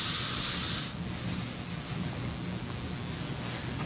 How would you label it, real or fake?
real